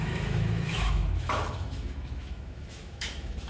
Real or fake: fake